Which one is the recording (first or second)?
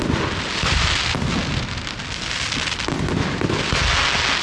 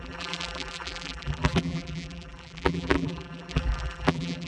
first